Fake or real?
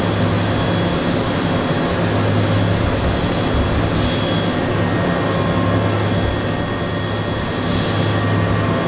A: real